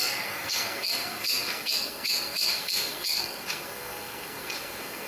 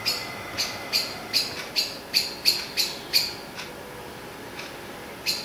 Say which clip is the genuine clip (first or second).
second